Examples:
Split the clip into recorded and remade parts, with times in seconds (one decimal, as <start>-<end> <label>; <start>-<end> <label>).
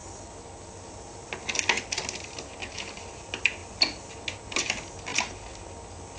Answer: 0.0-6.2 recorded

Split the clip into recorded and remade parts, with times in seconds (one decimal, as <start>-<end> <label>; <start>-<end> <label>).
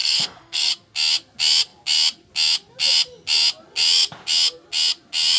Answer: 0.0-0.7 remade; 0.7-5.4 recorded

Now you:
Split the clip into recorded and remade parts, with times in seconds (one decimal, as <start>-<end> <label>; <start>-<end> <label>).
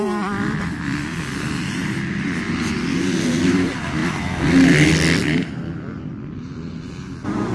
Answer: 0.0-4.0 remade; 4.0-5.2 recorded; 5.2-7.5 remade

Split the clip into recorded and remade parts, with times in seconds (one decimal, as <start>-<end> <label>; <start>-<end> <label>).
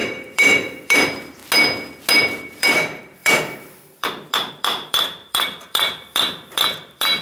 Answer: 0.0-1.4 remade; 1.4-2.2 recorded; 2.2-7.2 remade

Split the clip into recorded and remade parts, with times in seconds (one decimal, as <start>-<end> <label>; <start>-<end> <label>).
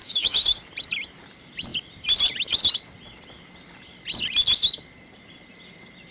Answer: 0.0-0.6 remade; 0.6-6.1 recorded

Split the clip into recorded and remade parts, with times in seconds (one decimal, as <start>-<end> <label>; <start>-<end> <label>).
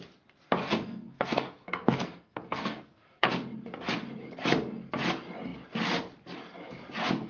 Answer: 0.0-0.6 recorded; 0.6-3.3 remade; 3.3-7.3 recorded